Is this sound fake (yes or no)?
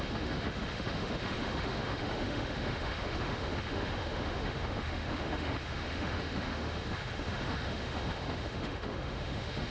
yes